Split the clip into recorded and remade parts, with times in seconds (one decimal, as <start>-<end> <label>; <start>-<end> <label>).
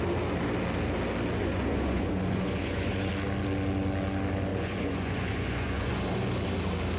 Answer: 0.0-1.4 recorded; 1.4-3.1 remade; 3.1-4.5 recorded; 4.5-6.0 remade; 6.0-7.0 recorded